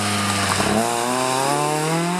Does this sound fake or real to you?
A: real